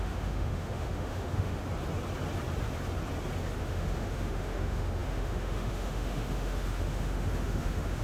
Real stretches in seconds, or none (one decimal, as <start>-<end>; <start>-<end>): 1.6-3.6